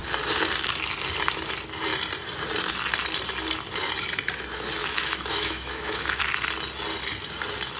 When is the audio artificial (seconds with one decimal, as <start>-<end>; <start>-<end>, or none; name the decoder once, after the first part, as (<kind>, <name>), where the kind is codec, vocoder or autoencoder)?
4.8-6.2 (autoencoder, DAC-VAE)